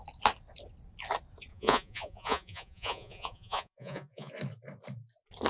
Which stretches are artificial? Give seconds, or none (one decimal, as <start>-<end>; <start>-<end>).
1.5-4.3